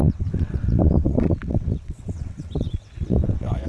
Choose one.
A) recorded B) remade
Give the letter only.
B